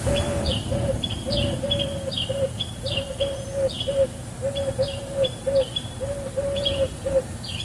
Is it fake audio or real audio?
fake